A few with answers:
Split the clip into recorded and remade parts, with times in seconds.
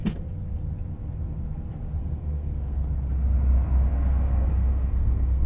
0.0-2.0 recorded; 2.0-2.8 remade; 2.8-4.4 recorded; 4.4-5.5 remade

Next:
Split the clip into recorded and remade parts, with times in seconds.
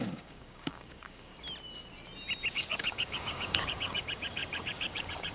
0.0-1.3 remade; 1.3-2.5 recorded; 2.5-5.3 remade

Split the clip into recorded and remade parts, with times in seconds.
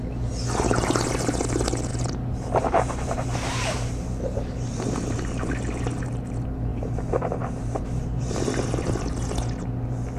0.0-1.9 recorded; 1.9-5.5 remade; 5.5-6.7 recorded; 6.7-8.4 remade; 8.4-10.2 recorded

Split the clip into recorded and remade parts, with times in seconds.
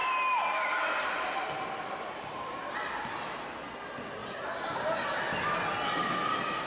0.0-6.7 recorded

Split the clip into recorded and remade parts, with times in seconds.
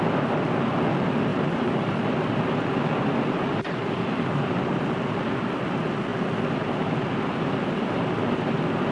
0.0-1.3 recorded; 1.3-2.3 remade; 2.3-3.5 recorded; 3.5-4.8 remade; 4.8-8.9 recorded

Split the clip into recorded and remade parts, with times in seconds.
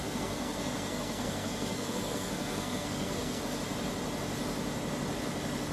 0.0-3.4 remade; 3.4-5.7 recorded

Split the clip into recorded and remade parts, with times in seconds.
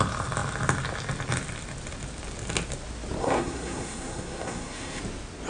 0.0-3.2 recorded; 3.2-5.0 remade; 5.0-5.5 recorded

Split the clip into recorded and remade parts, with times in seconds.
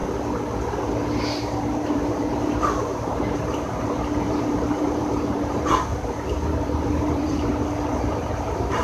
0.0-1.6 recorded; 1.6-7.5 remade; 7.5-8.1 recorded; 8.1-8.8 remade